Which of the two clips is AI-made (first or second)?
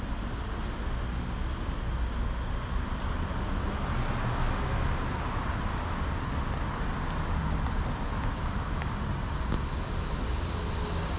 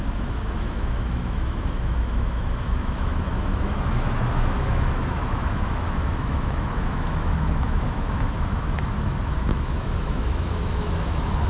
second